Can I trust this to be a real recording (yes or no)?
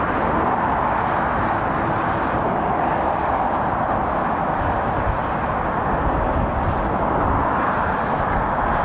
yes